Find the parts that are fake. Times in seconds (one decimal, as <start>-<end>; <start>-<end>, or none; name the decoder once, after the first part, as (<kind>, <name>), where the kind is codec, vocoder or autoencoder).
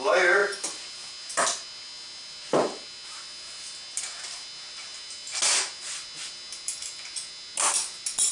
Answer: none